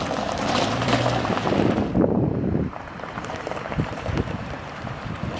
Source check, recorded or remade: remade